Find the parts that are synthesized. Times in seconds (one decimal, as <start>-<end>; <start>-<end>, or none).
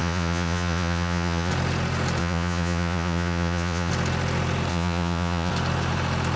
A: 0.0-1.5; 2.2-3.9; 4.7-5.5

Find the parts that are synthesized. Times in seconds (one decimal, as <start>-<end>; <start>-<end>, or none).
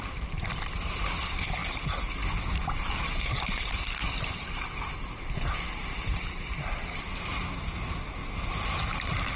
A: 1.6-3.4; 8.2-8.8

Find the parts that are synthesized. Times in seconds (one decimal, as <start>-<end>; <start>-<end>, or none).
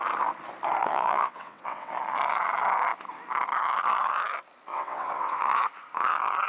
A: 0.8-1.9; 4.7-5.6